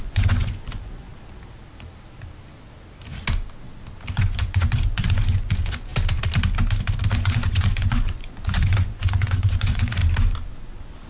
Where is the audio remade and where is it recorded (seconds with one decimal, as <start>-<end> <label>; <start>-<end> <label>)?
0.0-1.1 remade; 1.1-4.1 recorded; 4.1-5.9 remade; 5.9-7.1 recorded; 7.1-10.0 remade; 10.0-11.1 recorded